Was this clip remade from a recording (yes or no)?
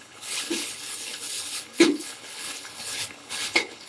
yes